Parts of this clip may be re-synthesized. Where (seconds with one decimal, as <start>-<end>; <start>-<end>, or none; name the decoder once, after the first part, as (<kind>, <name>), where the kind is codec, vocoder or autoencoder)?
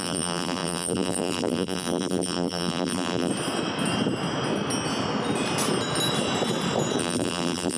0.0-3.3 (vocoder, BigVGAN v2); 7.0-7.8